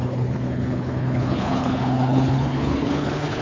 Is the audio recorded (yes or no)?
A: no